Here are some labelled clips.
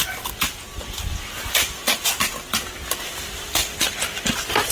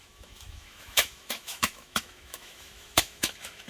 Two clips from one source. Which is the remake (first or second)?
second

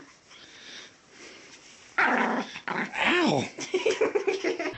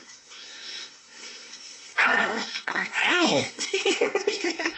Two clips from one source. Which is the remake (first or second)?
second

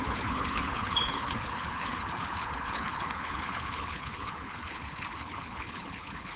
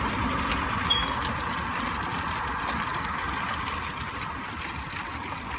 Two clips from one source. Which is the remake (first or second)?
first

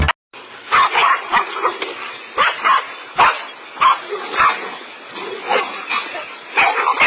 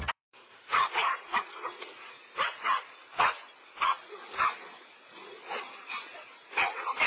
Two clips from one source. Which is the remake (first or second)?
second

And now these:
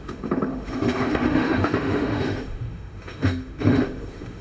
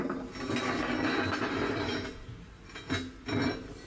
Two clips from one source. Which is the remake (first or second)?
first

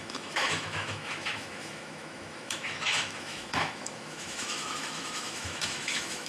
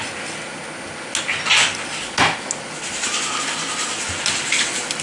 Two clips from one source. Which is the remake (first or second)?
first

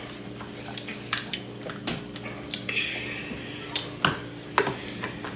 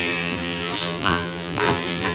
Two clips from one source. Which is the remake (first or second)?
second